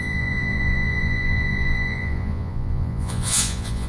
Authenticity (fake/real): fake